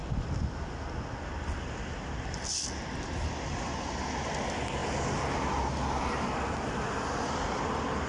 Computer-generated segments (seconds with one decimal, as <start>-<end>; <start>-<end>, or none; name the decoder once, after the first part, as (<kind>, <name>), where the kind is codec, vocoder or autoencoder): none